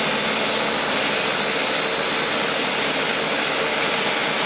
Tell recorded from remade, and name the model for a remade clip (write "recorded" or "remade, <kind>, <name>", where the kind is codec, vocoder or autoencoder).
recorded